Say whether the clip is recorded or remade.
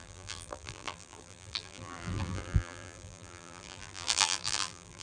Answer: remade